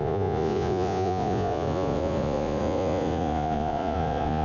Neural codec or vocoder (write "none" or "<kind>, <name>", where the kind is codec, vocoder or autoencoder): vocoder, Vocos